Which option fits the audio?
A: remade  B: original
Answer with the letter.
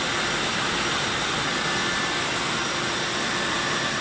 B